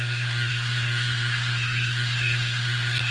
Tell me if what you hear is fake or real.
fake